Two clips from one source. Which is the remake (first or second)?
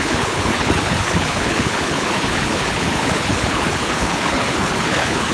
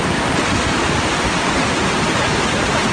first